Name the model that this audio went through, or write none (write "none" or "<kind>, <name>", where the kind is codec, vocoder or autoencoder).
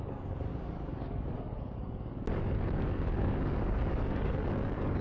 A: codec, DAC